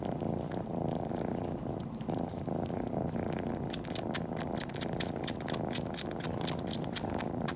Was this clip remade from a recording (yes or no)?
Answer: yes